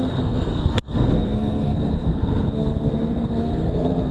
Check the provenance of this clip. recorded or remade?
remade